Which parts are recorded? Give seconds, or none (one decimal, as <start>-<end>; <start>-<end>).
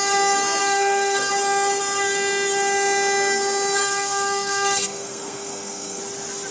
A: 0.0-0.6; 1.3-3.8; 6.0-6.5